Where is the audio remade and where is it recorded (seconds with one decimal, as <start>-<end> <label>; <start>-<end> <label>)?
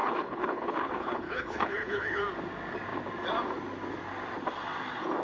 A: 0.0-2.2 remade; 2.2-5.2 recorded